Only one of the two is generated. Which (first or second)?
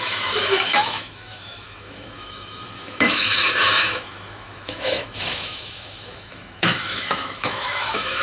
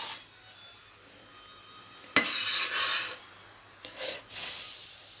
first